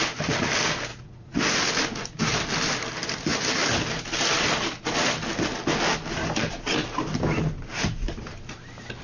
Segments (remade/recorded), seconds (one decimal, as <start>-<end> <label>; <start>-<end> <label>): 0.0-0.9 recorded; 0.9-1.4 remade; 1.4-9.0 recorded